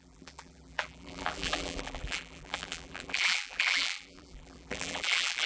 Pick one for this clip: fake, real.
fake